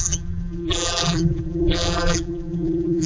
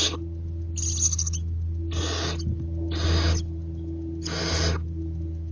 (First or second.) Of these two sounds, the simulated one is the first